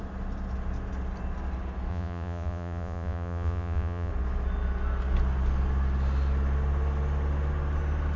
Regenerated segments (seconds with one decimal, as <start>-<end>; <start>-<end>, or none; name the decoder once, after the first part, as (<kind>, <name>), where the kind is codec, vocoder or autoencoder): 1.9-4.1 (vocoder, Vocos)